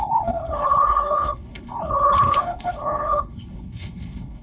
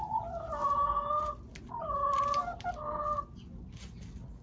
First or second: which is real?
second